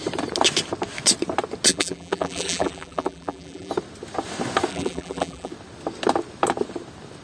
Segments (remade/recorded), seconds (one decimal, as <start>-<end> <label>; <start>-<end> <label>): 0.0-1.7 recorded; 1.7-3.7 remade; 3.7-4.7 recorded; 4.7-5.5 remade; 5.5-7.2 recorded